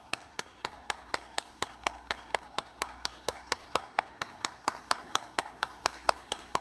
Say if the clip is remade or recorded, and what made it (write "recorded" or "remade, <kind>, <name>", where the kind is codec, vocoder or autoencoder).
remade, codec, SNAC